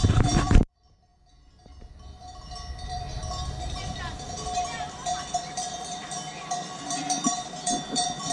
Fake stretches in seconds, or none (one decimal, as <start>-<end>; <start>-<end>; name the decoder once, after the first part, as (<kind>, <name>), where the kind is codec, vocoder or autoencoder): 0.0-1.1 (vocoder, BigVGAN v2); 3.5-8.3